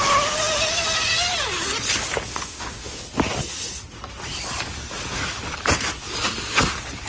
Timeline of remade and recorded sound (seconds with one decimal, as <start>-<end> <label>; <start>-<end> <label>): 0.0-2.3 recorded; 2.3-3.0 remade; 3.0-7.1 recorded